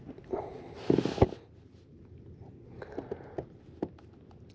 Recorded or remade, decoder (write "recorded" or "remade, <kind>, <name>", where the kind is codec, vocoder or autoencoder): recorded